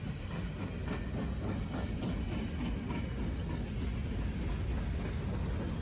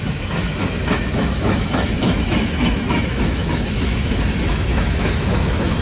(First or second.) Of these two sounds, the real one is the first